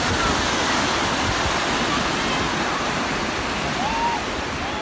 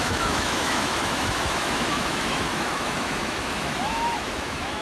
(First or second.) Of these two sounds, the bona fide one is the first